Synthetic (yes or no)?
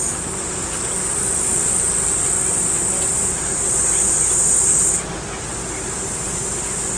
no